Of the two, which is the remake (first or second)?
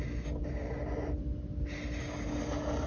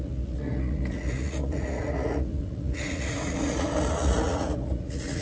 second